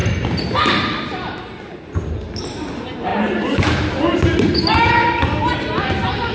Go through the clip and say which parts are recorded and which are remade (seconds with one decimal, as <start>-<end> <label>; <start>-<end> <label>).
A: 0.0-6.3 recorded